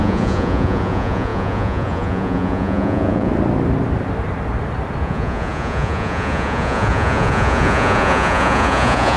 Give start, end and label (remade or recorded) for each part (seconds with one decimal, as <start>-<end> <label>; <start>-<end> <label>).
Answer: 0.0-3.3 remade; 3.3-5.0 recorded; 5.0-9.2 remade